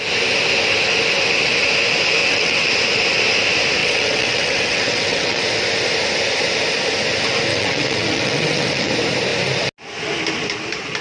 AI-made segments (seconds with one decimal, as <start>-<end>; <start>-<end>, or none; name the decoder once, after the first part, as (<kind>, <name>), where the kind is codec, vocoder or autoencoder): 2.2-2.7 (vocoder, WaveNeXt); 3.8-5.4; 7.5-8.9